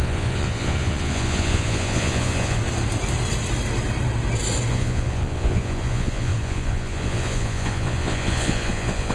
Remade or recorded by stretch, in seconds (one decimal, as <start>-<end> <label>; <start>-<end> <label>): 0.0-2.6 remade; 2.6-4.7 recorded; 4.7-9.1 remade